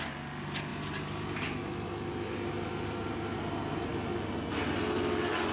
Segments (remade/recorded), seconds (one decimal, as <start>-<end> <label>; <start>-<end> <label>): 0.0-5.5 recorded